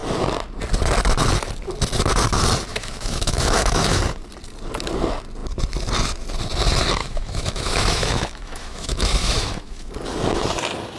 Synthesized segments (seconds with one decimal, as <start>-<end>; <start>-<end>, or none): 2.7-4.0; 7.0-9.9